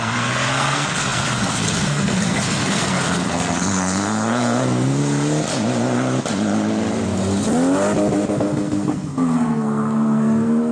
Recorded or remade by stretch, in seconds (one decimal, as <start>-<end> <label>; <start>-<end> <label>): 0.0-5.0 remade; 5.0-8.3 recorded; 8.3-10.7 remade

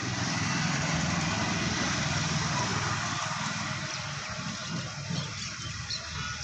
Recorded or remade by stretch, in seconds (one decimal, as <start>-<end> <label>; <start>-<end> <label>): 0.0-2.7 remade; 2.7-3.8 recorded; 3.8-4.6 remade; 4.6-5.3 recorded; 5.3-6.4 remade

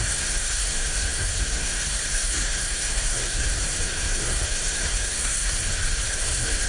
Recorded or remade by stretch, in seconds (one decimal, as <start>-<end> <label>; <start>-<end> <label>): 0.0-6.7 remade

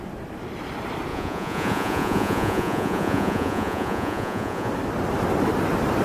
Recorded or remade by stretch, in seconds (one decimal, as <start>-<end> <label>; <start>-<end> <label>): 0.0-1.1 recorded; 1.1-4.7 remade; 4.7-6.0 recorded

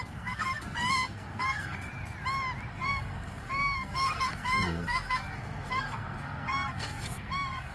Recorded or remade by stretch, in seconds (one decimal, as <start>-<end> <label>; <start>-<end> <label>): 0.0-1.9 remade; 1.9-2.7 recorded; 2.7-7.7 remade

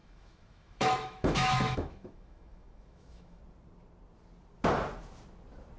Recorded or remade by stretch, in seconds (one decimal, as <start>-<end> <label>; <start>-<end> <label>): 0.0-3.4 remade; 3.4-5.8 recorded

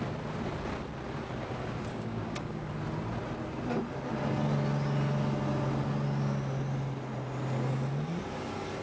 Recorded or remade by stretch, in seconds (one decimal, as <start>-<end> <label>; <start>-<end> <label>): 0.0-1.9 recorded; 1.9-2.7 remade; 2.7-8.8 recorded

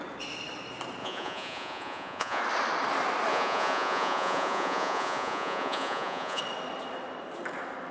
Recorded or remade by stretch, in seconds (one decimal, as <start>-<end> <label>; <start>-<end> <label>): 0.0-1.0 recorded; 1.0-2.4 remade; 2.4-3.3 recorded; 3.3-6.4 remade; 6.4-7.9 recorded